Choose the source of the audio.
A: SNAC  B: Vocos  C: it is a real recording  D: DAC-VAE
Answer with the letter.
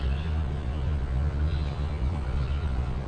B